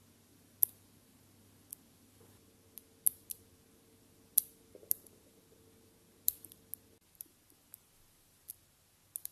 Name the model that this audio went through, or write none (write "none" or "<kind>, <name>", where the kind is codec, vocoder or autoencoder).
none